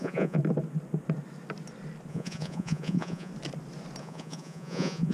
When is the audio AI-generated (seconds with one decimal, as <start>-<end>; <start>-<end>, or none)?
0.0-0.4; 2.1-3.3; 4.0-5.1